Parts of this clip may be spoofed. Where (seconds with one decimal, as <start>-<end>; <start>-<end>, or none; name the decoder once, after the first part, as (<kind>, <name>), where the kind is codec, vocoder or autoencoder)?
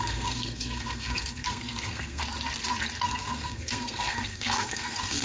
0.0-2.2 (codec, SNAC); 3.0-5.2